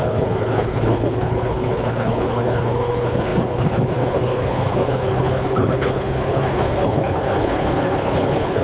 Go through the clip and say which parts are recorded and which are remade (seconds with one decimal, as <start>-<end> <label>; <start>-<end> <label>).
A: 0.0-8.6 remade